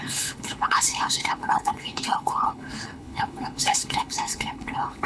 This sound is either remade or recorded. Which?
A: remade